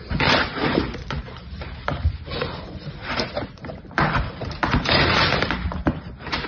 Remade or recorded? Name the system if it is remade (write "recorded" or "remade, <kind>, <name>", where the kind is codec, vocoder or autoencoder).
remade, vocoder, BigVGAN v2